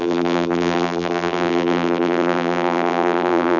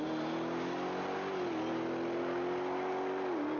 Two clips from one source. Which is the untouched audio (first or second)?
second